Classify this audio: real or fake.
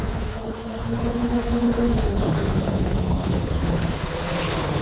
fake